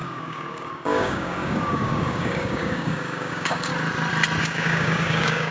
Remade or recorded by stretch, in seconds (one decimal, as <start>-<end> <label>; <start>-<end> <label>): 0.0-3.7 remade; 3.7-4.4 recorded; 4.4-5.5 remade